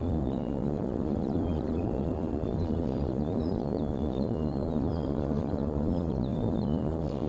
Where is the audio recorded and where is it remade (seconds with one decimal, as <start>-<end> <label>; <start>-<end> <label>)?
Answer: 0.0-7.3 remade